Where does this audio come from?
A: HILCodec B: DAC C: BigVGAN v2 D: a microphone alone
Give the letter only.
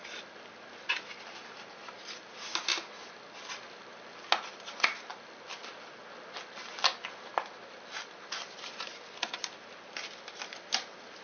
D